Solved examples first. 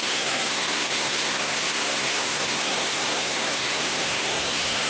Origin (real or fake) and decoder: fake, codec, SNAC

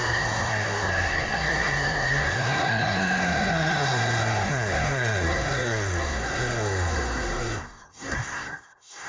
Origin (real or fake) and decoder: fake, codec, SNAC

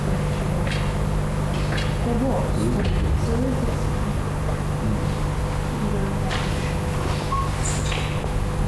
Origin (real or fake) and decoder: real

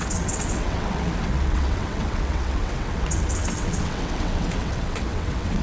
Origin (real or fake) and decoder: fake, vocoder, WaveNeXt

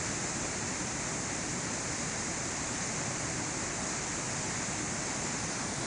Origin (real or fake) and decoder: real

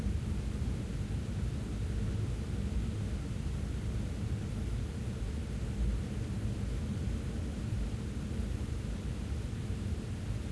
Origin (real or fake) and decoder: real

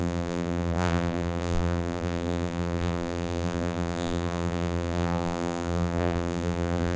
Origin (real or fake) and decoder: fake, vocoder, BigVGAN v2